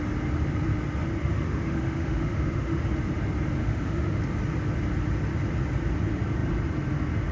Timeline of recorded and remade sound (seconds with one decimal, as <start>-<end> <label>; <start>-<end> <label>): 0.0-1.2 recorded; 1.2-2.8 remade; 2.8-3.6 recorded; 3.6-4.2 remade; 4.2-7.3 recorded